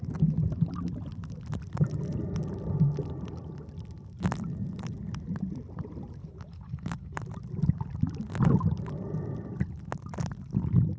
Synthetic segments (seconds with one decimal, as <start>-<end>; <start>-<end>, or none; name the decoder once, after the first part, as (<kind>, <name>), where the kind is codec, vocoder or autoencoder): 6.2-7.2 (codec, HILCodec)